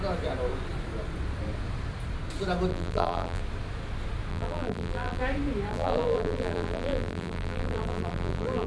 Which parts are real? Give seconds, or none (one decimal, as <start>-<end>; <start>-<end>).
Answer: 0.0-2.7; 3.4-4.3; 5.2-5.7